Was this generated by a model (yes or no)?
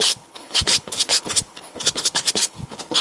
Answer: yes